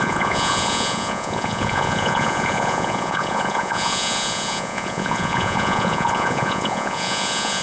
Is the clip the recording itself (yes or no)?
no